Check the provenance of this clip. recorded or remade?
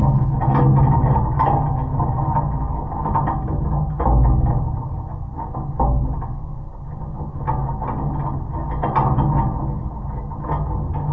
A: recorded